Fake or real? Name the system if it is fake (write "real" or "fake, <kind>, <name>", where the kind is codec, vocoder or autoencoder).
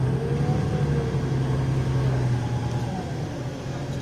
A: real